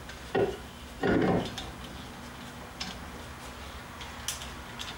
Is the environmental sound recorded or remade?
recorded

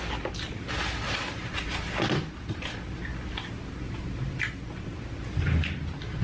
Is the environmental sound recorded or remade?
recorded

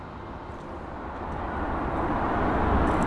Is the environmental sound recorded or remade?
recorded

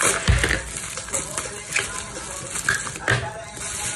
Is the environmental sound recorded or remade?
recorded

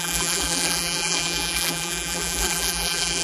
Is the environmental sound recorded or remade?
remade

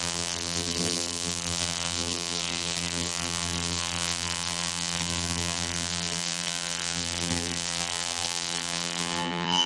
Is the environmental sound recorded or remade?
remade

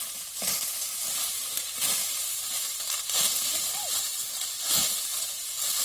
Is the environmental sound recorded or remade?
remade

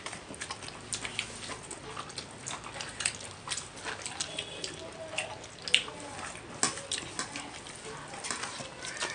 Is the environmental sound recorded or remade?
recorded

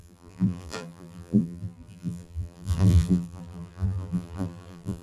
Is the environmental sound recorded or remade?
remade